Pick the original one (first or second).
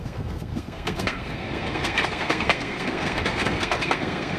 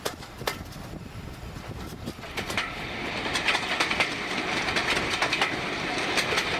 second